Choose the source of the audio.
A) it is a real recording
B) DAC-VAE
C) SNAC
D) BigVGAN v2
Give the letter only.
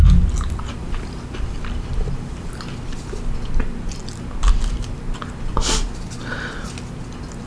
A